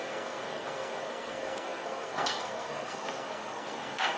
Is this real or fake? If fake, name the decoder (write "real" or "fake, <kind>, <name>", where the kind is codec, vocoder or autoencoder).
fake, codec, SNAC